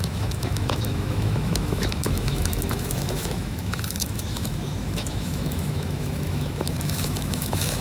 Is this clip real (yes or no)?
no